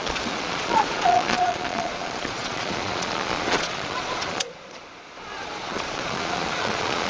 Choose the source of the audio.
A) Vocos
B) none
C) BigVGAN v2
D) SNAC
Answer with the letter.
A